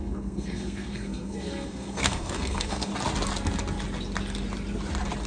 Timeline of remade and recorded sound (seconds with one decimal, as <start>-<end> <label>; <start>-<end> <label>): 0.0-2.9 remade; 2.9-5.3 recorded